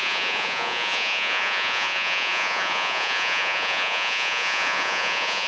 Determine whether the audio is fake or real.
fake